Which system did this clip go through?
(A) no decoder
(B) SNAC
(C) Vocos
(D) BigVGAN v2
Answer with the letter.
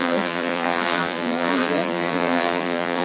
D